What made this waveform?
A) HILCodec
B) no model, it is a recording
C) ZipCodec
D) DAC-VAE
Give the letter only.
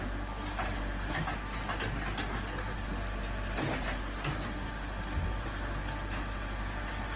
B